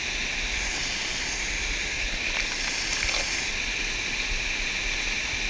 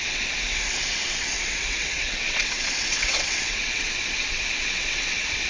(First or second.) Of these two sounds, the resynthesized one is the second